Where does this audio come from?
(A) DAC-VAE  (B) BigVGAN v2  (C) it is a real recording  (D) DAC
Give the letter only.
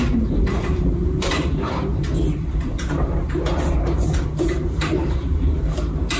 B